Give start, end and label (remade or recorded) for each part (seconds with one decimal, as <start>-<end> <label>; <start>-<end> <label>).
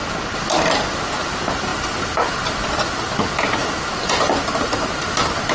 0.0-5.5 recorded